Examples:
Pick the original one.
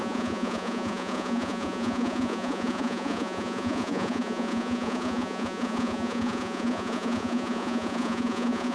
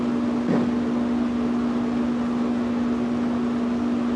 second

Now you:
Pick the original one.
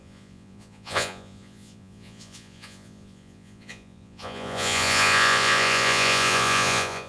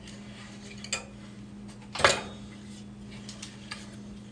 second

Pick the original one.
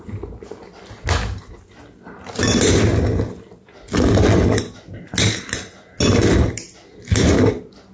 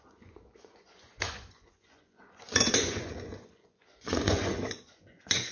first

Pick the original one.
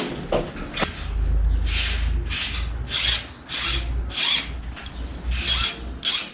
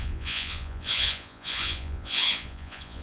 first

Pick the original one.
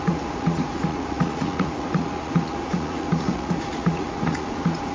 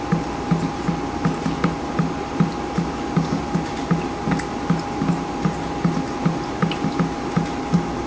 second